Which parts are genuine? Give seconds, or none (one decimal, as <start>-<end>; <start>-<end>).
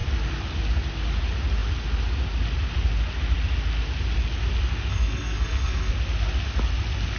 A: 0.0-4.9; 5.9-7.2